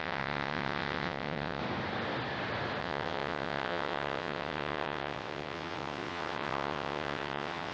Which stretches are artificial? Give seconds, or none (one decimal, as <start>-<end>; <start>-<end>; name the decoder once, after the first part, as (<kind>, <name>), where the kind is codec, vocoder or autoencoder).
0.0-1.6 (vocoder, WaveNeXt); 2.8-7.7